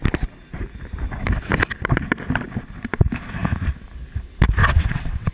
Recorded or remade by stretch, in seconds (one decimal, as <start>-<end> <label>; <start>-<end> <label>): 0.0-4.6 recorded; 4.6-5.3 remade

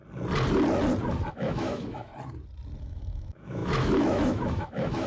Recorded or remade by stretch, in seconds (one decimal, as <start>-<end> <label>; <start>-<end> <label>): 0.0-1.3 recorded; 1.3-2.1 remade; 2.1-2.8 recorded; 2.8-5.1 remade

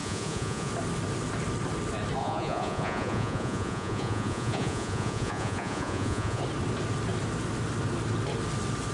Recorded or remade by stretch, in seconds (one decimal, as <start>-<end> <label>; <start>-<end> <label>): 0.0-0.7 remade; 0.7-2.2 recorded; 2.2-6.4 remade; 6.4-8.9 recorded

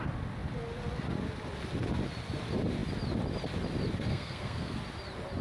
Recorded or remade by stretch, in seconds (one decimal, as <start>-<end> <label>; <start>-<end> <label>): 0.0-4.1 recorded; 4.1-4.8 remade; 4.8-5.4 recorded

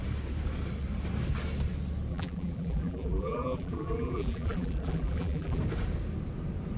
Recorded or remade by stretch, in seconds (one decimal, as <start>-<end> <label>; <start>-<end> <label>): 0.0-2.1 recorded; 2.1-5.6 remade; 5.6-6.8 recorded

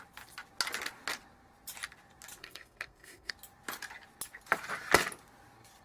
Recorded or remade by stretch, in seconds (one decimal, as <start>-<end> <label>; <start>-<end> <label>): 0.0-2.4 recorded; 2.4-3.3 remade; 3.3-5.8 recorded

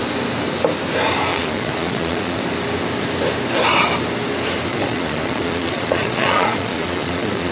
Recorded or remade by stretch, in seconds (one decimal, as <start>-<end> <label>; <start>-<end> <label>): 0.0-1.3 recorded; 1.3-2.4 remade; 2.4-4.7 recorded; 4.7-7.5 remade

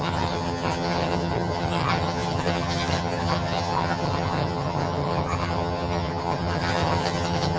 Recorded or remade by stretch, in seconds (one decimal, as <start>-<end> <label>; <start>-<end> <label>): 0.0-7.6 remade